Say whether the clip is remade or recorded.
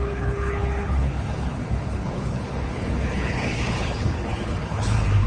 remade